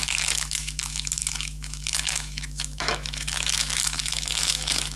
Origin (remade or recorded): remade